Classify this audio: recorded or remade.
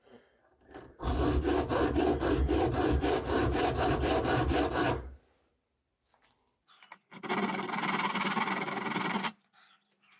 remade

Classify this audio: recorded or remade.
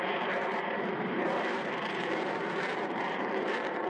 remade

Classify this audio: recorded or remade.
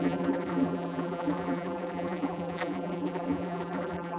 remade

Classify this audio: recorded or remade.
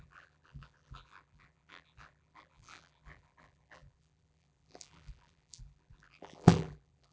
remade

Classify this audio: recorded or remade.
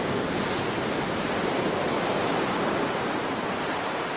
recorded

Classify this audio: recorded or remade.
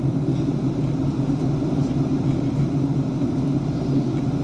remade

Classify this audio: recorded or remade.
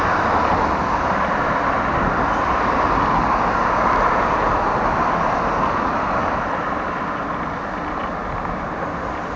recorded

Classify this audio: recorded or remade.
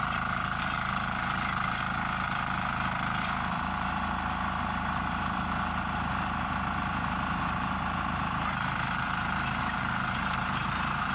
remade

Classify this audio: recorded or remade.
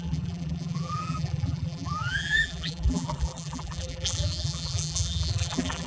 remade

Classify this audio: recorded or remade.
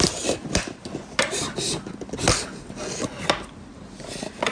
recorded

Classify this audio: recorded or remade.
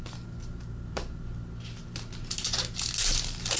recorded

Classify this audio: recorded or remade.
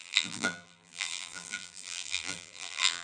remade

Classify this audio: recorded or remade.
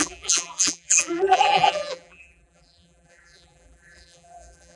remade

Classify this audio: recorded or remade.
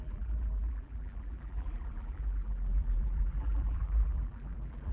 remade